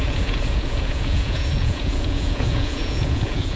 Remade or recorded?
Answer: remade